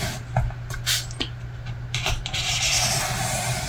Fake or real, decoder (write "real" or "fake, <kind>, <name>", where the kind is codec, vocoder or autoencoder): real